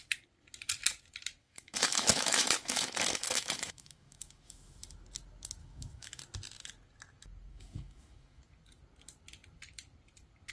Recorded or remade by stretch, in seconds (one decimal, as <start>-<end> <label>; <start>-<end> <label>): 0.0-1.4 recorded; 1.4-4.8 remade; 4.8-5.6 recorded; 5.6-6.2 remade; 6.2-7.5 recorded; 7.5-8.4 remade; 8.4-10.5 recorded